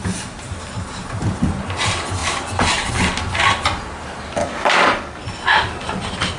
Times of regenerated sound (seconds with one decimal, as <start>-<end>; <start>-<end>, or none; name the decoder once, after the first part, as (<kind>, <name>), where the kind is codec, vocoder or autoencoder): 4.4-5.2 (codec, DAC)